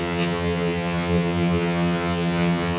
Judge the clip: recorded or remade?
remade